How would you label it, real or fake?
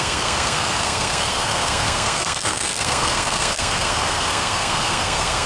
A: fake